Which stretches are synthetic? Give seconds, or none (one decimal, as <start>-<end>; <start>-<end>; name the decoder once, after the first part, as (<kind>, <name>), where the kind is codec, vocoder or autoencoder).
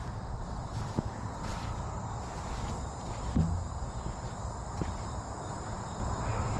none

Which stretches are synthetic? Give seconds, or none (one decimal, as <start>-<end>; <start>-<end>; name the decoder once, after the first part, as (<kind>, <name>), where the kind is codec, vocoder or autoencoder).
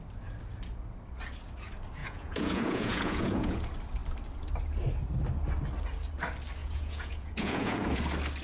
2.0-3.6 (vocoder, Vocos); 6.6-8.0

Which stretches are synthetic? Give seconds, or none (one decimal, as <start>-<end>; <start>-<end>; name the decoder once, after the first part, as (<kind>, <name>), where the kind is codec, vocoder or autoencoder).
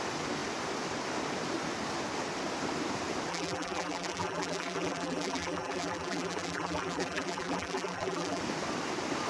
3.3-8.4 (vocoder, BigVGAN v2)